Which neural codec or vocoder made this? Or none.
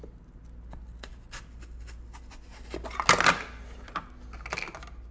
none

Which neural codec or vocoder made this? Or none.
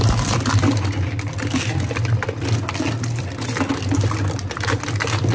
none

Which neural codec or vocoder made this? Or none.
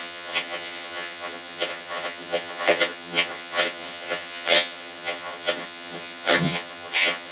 vocoder, HiFi-GAN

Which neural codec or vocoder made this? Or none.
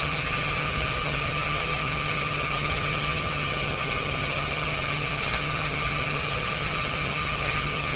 vocoder, HiFi-GAN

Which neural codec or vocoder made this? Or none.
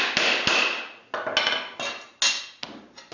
none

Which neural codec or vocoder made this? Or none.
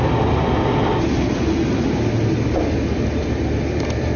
none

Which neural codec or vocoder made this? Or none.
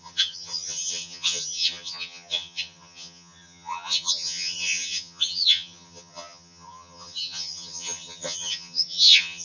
vocoder, HiFi-GAN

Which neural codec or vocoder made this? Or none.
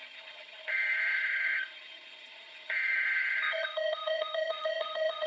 vocoder, HiFi-GAN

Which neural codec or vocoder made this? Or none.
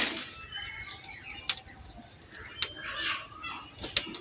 none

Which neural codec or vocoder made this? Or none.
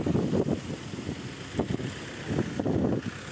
none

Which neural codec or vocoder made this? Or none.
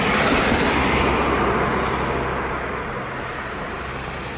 none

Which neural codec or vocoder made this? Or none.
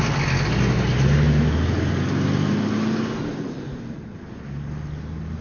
none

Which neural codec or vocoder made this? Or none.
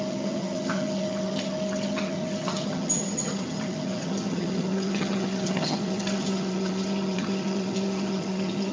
vocoder, HiFi-GAN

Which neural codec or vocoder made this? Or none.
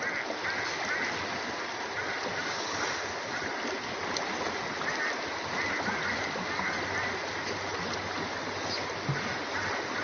none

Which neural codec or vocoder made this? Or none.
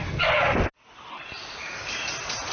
none